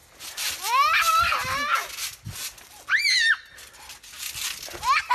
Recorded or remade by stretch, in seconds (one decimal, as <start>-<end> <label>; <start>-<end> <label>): 0.0-5.1 recorded